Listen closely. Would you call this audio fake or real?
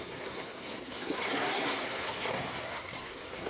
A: fake